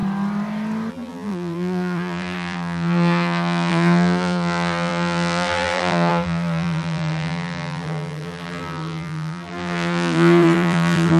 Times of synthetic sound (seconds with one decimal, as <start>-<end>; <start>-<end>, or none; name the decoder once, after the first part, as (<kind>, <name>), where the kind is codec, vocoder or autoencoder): 0.9-11.2 (vocoder, BigVGAN v2)